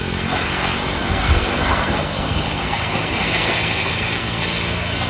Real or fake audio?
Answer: fake